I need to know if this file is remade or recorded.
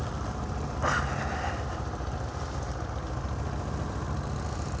recorded